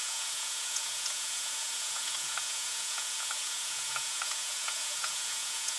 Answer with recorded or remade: remade